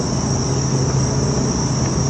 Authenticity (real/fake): real